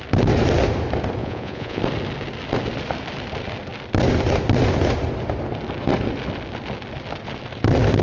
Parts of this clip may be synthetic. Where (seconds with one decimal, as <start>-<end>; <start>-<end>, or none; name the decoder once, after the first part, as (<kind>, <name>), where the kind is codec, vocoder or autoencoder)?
1.2-1.8 (vocoder, Vocos)